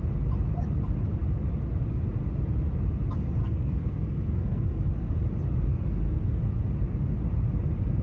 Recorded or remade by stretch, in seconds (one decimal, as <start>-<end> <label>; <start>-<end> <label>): 0.0-3.4 recorded; 3.4-5.1 remade; 5.1-5.7 recorded; 5.7-6.4 remade; 6.4-8.0 recorded